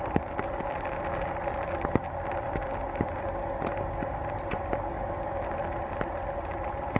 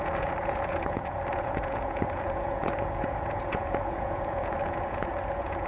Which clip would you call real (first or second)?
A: first